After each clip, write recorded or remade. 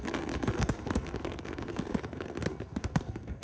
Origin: remade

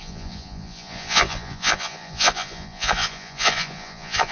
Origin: remade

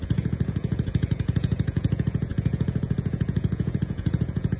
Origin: remade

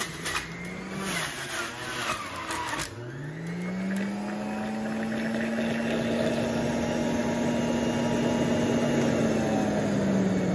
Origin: recorded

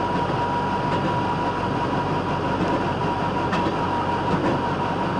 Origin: recorded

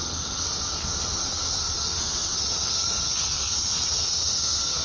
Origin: remade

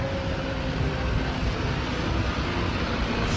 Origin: recorded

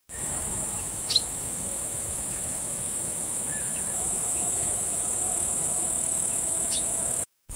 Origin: remade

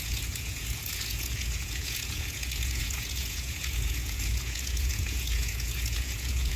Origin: remade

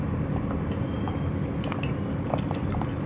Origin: recorded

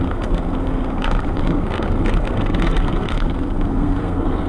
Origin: remade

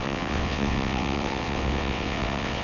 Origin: remade